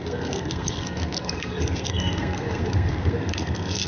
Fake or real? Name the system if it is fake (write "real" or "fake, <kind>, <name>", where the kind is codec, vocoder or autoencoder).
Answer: fake, codec, SNAC